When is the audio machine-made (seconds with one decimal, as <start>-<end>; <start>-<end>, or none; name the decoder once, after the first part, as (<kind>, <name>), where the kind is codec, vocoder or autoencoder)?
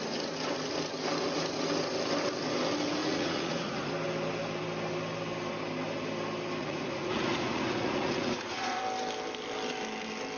3.0-3.9 (vocoder, Vocos); 6.6-8.8